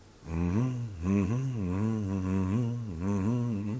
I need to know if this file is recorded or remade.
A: recorded